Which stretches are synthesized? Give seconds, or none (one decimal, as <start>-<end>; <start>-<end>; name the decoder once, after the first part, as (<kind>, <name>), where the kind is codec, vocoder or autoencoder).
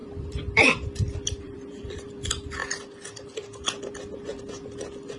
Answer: 0.0-2.1 (vocoder, BigVGAN v2)